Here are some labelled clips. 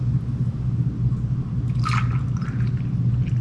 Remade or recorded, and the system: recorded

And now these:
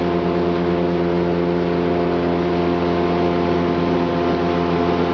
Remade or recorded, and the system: recorded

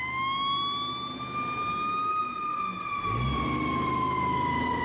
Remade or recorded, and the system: recorded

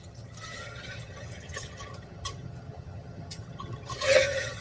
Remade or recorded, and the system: remade, vocoder, HiFi-GAN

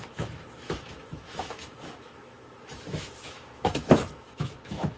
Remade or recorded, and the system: remade, autoencoder, DAC-VAE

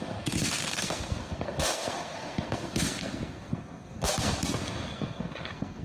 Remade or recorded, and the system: remade, codec, SNAC